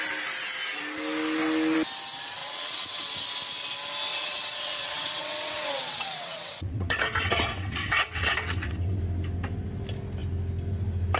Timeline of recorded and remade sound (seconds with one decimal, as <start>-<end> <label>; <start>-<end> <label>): 0.0-2.4 recorded; 2.4-3.2 remade; 3.2-4.1 recorded; 4.1-9.0 remade; 9.0-11.2 recorded

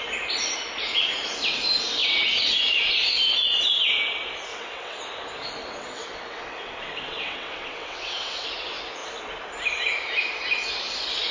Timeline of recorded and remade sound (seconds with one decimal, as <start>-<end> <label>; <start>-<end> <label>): 0.0-2.0 recorded; 2.0-2.6 remade; 2.6-4.5 recorded; 4.5-5.0 remade; 5.0-5.6 recorded; 5.6-8.5 remade; 8.5-11.3 recorded